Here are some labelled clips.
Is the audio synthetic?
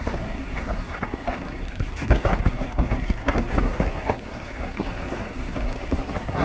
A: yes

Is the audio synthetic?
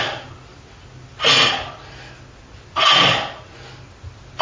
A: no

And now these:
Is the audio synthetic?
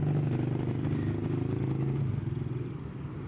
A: no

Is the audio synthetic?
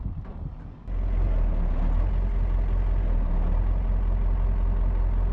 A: no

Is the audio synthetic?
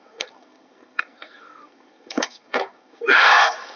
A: yes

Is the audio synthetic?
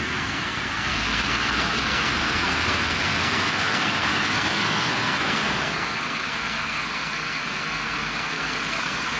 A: yes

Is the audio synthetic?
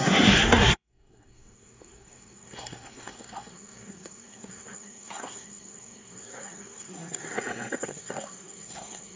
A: yes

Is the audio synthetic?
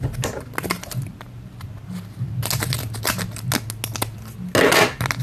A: no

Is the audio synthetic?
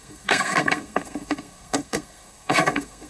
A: yes